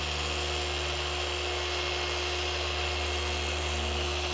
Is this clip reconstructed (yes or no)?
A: no